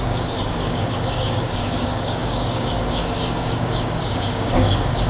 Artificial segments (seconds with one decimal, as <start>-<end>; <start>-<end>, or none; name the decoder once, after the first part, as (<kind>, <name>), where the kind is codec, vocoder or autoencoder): 0.0-5.1 (codec, DAC)